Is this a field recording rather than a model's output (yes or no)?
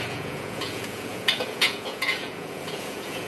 no